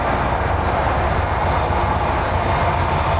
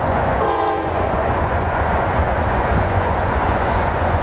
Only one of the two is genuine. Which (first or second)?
first